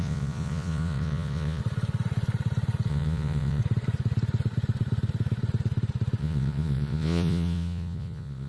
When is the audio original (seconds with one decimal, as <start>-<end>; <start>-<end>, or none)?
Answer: 1.6-2.9; 3.6-6.2